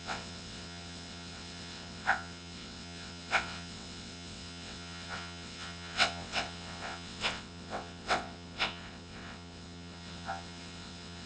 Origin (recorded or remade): remade